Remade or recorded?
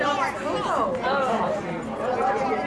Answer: recorded